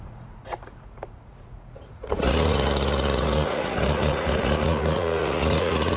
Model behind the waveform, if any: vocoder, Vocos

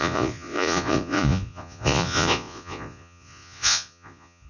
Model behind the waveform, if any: vocoder, Vocos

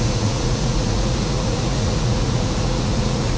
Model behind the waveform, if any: vocoder, Vocos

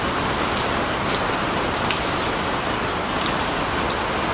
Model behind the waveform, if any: none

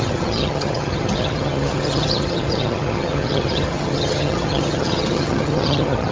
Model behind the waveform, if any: vocoder, HiFi-GAN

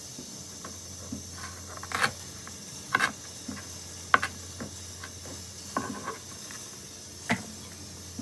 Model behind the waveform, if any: none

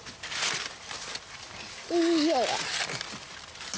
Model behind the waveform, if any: none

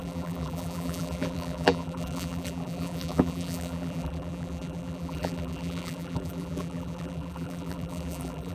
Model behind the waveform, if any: vocoder, BigVGAN v2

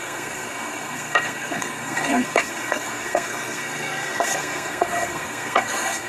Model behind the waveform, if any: codec, SNAC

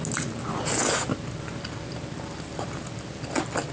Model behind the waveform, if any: none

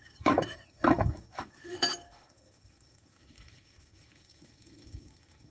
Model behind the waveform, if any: autoencoder, DAC-VAE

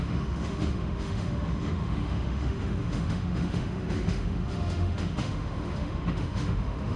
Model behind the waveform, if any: autoencoder, DAC-VAE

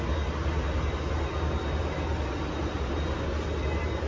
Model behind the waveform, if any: none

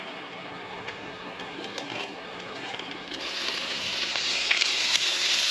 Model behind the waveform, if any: codec, SNAC